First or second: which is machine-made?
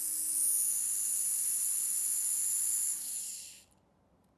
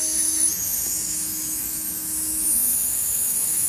second